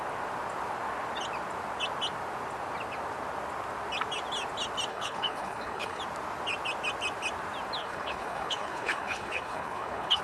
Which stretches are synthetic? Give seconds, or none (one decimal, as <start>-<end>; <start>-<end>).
4.9-6.0; 7.8-10.2